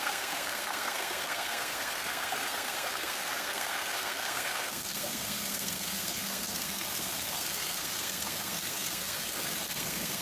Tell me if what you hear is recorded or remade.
remade